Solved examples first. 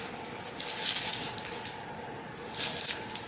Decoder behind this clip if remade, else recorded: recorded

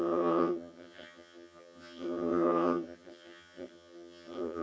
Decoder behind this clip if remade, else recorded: remade, vocoder, HiFi-GAN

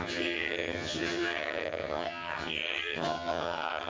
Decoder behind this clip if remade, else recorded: remade, vocoder, HiFi-GAN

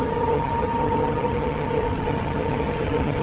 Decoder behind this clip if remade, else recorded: remade, vocoder, HiFi-GAN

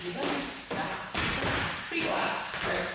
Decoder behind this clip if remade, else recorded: recorded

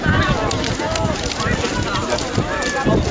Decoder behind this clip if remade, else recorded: recorded